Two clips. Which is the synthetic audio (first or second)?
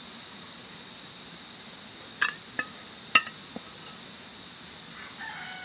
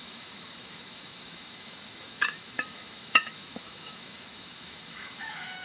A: second